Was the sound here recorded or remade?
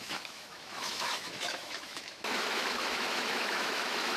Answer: remade